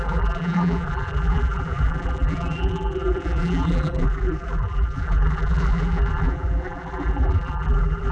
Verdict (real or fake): fake